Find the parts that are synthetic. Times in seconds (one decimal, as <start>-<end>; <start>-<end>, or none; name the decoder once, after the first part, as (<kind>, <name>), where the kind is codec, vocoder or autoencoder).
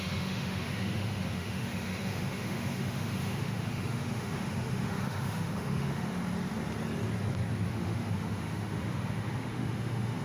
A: 0.0-6.2 (autoencoder, DAC-VAE); 7.7-10.2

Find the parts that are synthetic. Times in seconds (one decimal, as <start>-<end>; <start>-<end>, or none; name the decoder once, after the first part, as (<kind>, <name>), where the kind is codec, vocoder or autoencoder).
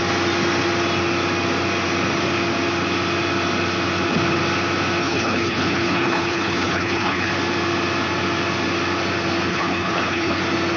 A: 5.0-7.3 (codec, HILCodec); 9.5-10.4